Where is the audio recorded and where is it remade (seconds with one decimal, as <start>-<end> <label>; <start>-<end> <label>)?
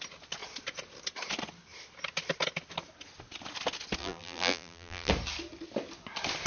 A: 0.0-4.0 recorded; 4.0-5.1 remade; 5.1-6.5 recorded